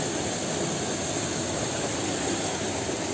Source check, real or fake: real